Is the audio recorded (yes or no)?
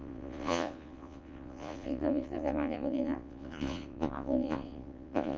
no